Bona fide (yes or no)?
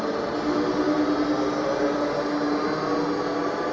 yes